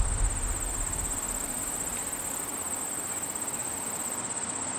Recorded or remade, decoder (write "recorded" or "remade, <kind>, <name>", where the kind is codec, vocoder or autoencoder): recorded